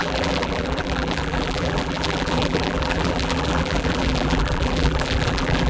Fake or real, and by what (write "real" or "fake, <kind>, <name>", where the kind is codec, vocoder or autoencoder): fake, vocoder, BigVGAN v2